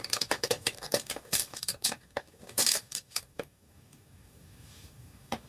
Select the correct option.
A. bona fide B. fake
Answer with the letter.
B